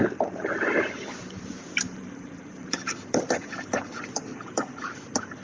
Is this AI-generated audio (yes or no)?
yes